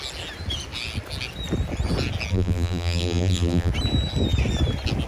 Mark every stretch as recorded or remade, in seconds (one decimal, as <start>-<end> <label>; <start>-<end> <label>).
0.0-2.3 recorded; 2.3-3.7 remade; 3.7-5.1 recorded